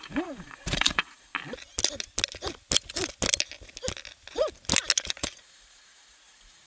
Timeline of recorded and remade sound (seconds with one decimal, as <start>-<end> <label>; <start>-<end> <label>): 0.0-1.3 remade; 1.3-5.1 recorded; 5.1-6.7 remade